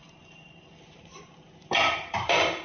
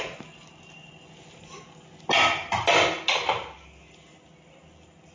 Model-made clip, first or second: first